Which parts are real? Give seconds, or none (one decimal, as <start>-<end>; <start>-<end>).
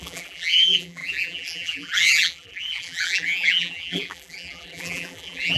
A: none